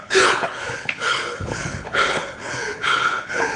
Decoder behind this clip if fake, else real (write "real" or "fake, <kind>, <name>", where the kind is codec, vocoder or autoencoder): fake, codec, HILCodec